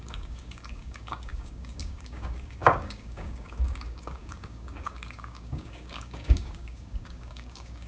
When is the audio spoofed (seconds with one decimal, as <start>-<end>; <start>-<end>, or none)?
0.0-7.9